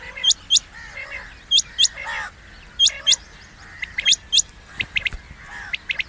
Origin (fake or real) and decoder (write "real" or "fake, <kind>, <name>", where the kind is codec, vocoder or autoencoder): real